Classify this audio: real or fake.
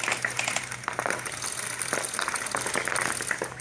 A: real